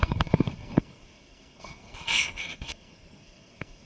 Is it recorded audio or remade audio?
remade